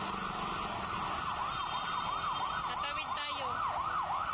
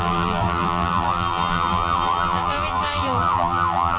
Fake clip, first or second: second